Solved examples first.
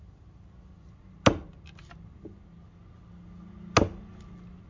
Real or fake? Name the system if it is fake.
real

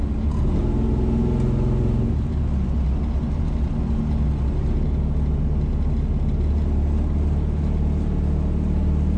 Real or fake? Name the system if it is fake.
real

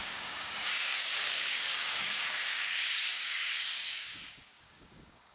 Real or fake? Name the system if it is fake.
fake, codec, DAC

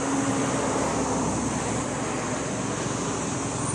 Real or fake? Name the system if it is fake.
real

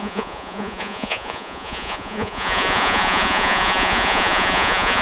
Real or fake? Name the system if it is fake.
fake, vocoder, Vocos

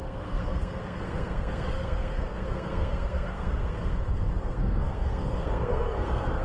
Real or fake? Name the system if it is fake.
fake, codec, SNAC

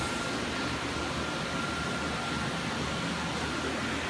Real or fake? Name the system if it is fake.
real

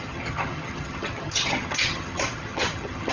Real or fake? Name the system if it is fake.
fake, vocoder, HiFi-GAN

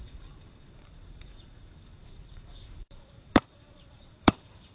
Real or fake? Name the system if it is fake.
fake, vocoder, BigVGAN v2